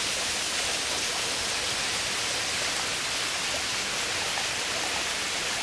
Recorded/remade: recorded